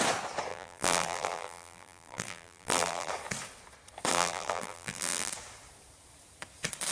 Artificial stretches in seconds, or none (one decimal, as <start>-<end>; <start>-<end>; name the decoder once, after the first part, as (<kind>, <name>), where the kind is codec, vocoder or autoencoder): 0.5-3.1 (vocoder, BigVGAN v2); 4.1-5.3